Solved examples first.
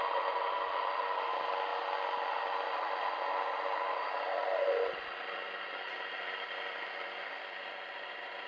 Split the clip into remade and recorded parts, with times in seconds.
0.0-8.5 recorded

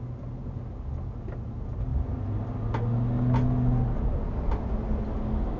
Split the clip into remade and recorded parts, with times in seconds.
0.0-5.6 recorded

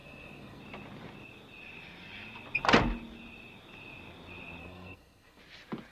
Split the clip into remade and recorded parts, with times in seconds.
0.0-0.6 remade; 0.6-4.6 recorded; 4.6-5.4 remade; 5.4-5.9 recorded

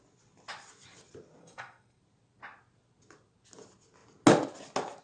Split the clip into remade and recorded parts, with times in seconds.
0.0-1.4 recorded; 1.4-2.0 remade; 2.0-5.0 recorded